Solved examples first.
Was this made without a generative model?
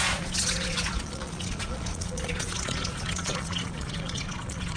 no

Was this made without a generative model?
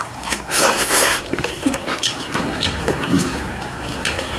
no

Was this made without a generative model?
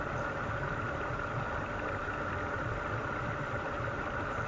yes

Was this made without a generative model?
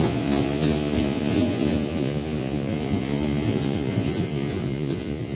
no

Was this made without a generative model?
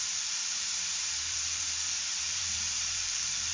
no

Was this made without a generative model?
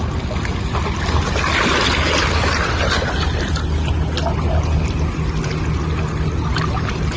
yes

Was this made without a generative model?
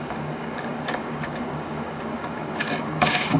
no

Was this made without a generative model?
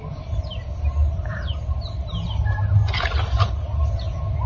yes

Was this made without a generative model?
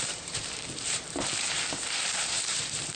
no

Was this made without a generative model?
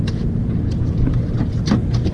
yes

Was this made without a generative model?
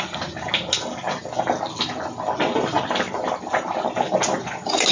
yes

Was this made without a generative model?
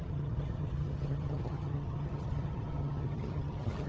no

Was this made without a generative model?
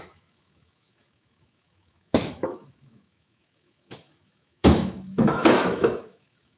no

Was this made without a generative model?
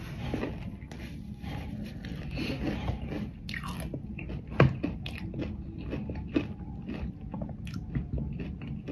yes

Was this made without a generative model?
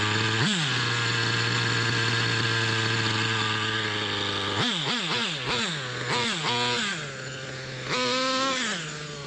yes